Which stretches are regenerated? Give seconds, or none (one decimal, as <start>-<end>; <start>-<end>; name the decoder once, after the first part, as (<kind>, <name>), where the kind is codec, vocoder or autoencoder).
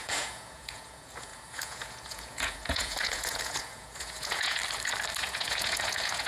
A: 0.0-4.6 (vocoder, Vocos); 5.2-6.3